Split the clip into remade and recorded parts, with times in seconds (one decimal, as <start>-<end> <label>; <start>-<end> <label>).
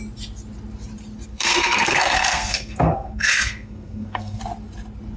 0.0-1.3 recorded; 1.3-4.4 remade; 4.4-5.2 recorded